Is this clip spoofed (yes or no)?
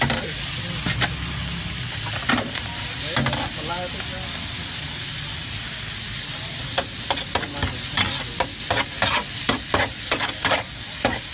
no